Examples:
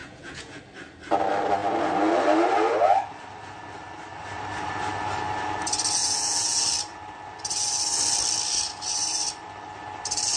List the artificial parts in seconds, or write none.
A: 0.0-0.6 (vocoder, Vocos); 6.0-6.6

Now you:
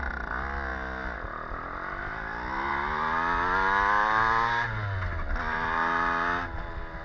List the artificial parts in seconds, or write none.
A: none

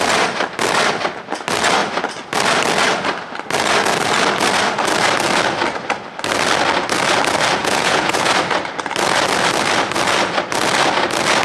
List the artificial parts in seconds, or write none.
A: 7.6-8.3 (vocoder, Vocos)

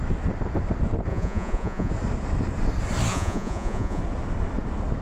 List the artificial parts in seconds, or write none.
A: 1.1-1.9 (vocoder, Vocos); 3.1-4.0

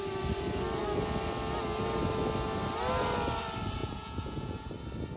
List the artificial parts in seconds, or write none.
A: 3.8-4.7 (vocoder, Vocos)

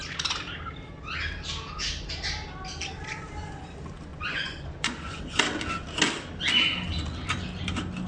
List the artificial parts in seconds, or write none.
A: 4.1-5.4 (vocoder, Vocos)